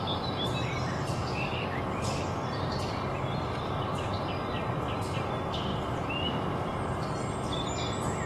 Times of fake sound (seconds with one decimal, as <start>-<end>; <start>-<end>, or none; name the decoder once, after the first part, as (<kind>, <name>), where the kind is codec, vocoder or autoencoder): 1.3-2.2 (codec, DAC)